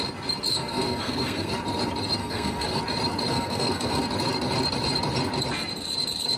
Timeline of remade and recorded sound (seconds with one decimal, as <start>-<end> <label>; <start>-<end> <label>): 0.0-0.5 recorded; 0.5-1.5 remade; 1.5-2.2 recorded; 2.2-2.8 remade; 2.8-3.3 recorded; 3.3-4.0 remade; 4.0-6.4 recorded